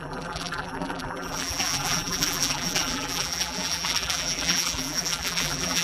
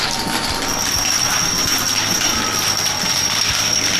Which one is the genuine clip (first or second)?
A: second